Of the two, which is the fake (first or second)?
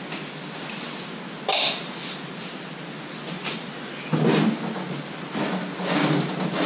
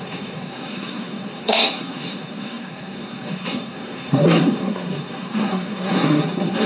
second